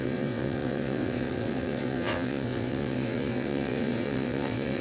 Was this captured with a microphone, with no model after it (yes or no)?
no